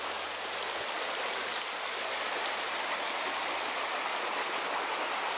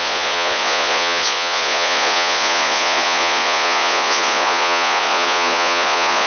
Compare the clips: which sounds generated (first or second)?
second